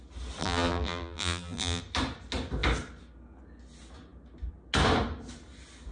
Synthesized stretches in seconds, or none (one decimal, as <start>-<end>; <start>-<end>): 0.4-1.8